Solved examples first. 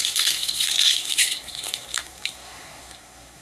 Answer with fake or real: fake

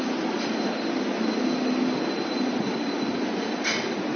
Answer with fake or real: real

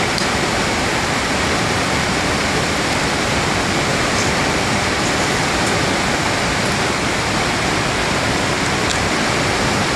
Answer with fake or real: real